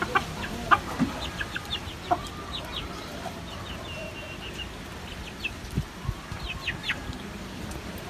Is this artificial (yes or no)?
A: no